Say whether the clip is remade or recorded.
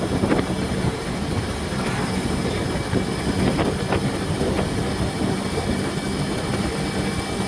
recorded